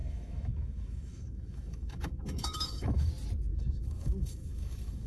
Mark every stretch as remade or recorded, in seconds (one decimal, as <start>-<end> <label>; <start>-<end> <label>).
0.0-3.1 remade; 3.1-3.5 recorded; 3.5-5.1 remade